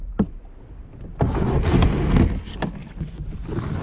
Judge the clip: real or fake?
real